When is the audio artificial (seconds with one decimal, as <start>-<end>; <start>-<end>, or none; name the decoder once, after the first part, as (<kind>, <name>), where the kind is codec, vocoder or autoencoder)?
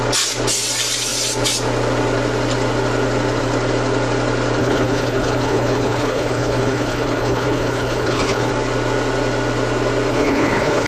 4.6-8.5 (codec, HILCodec); 10.1-10.9